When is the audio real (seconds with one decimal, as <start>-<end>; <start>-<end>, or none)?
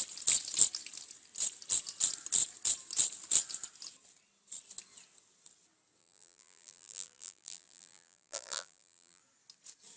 0.0-6.0; 9.2-10.0